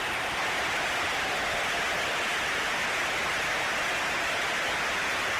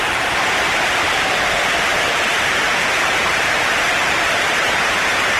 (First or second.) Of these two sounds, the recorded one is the first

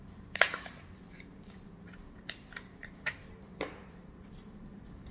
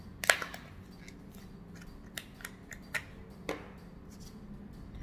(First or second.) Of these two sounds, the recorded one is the second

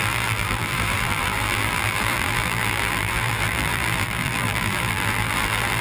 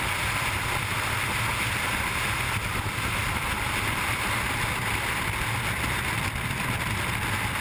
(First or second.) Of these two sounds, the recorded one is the second